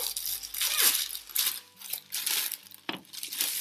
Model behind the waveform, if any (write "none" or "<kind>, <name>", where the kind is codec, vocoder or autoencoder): none